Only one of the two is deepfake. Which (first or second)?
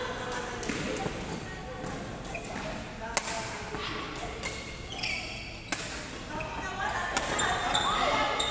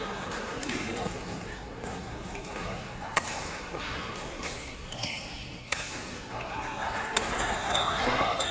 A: second